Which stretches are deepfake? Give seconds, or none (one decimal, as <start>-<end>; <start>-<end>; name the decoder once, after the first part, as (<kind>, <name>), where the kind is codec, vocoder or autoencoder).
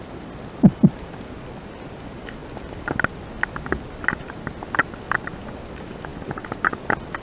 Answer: none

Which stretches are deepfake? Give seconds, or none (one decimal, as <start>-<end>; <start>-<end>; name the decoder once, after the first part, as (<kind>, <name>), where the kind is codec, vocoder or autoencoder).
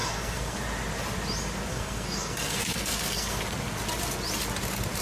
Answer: 0.0-0.6 (codec, SNAC); 1.7-3.4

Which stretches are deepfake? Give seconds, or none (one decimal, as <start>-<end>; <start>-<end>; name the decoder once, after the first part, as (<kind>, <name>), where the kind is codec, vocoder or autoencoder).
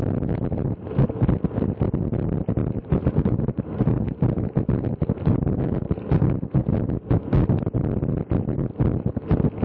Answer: 2.8-5.9 (vocoder, BigVGAN v2)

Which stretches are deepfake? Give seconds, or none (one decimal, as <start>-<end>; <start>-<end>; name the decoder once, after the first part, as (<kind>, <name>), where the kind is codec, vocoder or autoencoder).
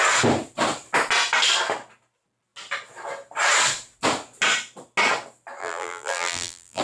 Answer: 5.6-6.8 (vocoder, BigVGAN v2)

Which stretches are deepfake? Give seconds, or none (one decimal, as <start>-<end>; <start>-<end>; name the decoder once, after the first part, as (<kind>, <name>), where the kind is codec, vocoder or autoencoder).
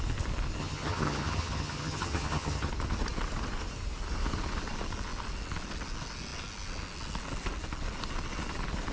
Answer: 0.6-2.7 (vocoder, HiFi-GAN)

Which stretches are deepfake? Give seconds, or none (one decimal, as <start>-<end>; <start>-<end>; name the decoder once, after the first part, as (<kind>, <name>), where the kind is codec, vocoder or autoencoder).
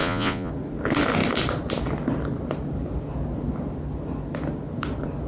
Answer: 0.0-0.5 (vocoder, Vocos)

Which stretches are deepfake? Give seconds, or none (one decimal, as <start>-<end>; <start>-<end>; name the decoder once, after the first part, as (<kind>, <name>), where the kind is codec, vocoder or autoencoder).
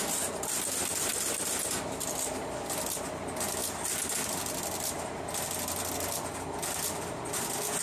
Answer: none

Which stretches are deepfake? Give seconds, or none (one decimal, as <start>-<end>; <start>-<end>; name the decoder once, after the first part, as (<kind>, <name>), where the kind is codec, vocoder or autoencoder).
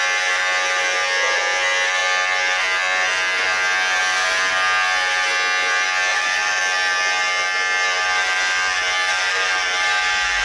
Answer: 6.1-6.6 (vocoder, BigVGAN v2)